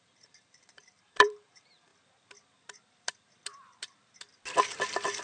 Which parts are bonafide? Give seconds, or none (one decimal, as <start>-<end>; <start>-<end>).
1.9-5.2